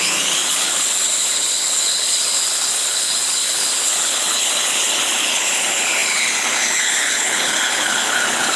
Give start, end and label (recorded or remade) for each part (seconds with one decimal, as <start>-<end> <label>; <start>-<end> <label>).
0.0-8.6 remade